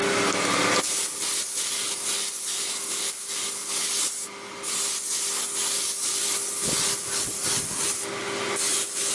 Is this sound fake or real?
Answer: real